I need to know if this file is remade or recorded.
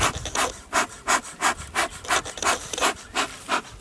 recorded